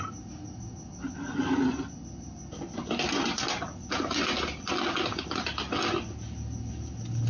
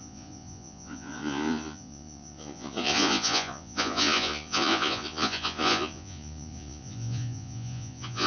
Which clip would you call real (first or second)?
first